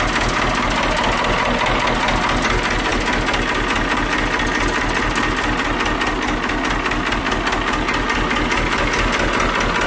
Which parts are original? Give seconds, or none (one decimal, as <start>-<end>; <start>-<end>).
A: 0.0-9.9